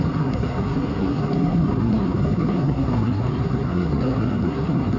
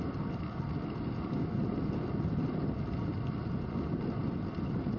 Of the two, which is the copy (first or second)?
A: first